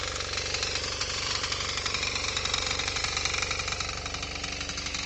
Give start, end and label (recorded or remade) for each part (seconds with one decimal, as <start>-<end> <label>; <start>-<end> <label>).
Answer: 0.0-1.0 recorded; 1.0-3.0 remade; 3.0-5.1 recorded